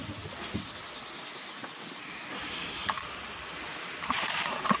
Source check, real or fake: real